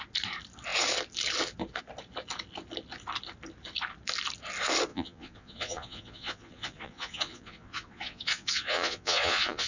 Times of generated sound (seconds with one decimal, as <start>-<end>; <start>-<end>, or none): 4.9-9.7